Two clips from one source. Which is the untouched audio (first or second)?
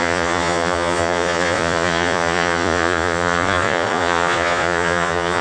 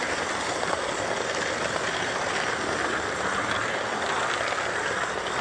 second